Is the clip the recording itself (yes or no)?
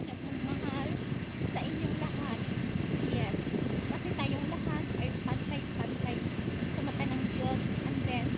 yes